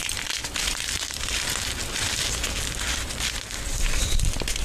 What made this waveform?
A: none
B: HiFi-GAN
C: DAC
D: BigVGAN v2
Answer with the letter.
D